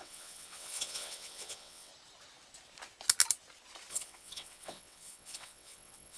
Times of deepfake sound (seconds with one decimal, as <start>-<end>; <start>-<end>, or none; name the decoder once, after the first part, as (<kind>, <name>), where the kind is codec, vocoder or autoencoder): 0.0-1.9 (vocoder, WaveNeXt); 3.9-6.2